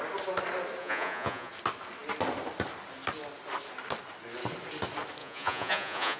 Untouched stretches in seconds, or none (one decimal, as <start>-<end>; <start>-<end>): 0.0-0.8; 1.5-5.2